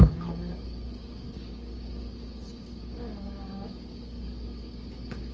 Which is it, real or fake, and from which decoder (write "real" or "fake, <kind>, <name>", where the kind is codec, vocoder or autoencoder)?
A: fake, codec, DAC